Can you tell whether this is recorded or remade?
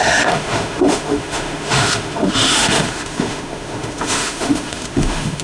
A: remade